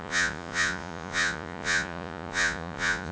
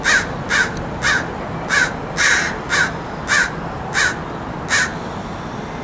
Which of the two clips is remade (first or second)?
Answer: first